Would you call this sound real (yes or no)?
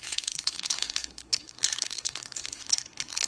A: no